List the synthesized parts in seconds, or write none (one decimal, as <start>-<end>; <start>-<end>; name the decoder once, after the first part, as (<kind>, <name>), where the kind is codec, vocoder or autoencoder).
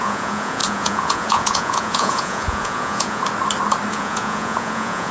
0.0-3.2 (vocoder, Vocos); 3.9-5.1